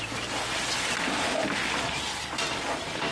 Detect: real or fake real